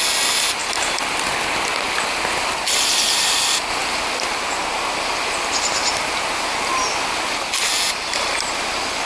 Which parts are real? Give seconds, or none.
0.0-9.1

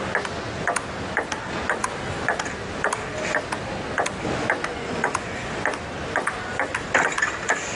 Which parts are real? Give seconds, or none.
0.0-4.7; 5.5-7.7